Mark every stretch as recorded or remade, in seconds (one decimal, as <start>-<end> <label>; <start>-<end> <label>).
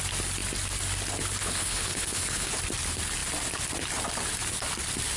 0.0-1.4 recorded; 1.4-2.5 remade; 2.5-5.2 recorded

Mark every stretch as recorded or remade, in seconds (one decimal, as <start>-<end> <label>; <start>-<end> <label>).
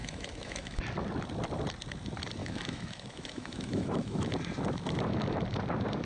0.0-0.8 remade; 0.8-2.4 recorded; 2.4-4.3 remade; 4.3-6.0 recorded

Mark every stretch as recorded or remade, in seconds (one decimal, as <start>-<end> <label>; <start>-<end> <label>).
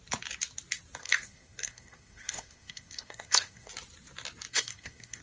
0.0-1.0 recorded; 1.0-3.7 remade; 3.7-4.5 recorded; 4.5-5.2 remade